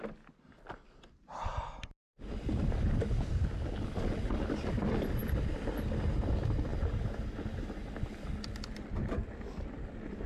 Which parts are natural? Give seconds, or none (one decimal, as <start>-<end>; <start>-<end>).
0.0-10.3